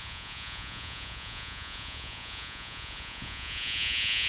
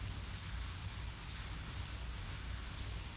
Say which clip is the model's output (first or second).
first